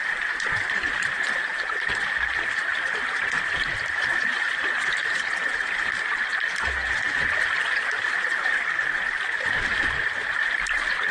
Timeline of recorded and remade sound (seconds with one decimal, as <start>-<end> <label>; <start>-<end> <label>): 0.0-11.1 remade